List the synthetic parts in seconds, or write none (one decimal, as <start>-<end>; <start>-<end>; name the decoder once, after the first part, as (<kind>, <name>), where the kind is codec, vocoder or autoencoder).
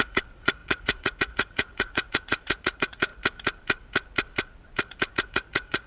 0.0-3.1 (vocoder, Vocos); 5.1-5.9